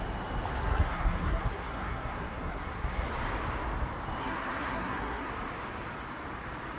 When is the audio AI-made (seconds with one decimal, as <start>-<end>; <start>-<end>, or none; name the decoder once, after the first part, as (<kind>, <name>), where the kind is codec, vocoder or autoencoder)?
0.6-3.1 (codec, SNAC); 4.2-5.3